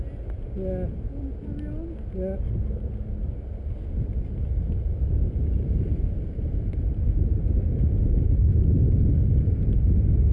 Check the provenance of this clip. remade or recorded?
recorded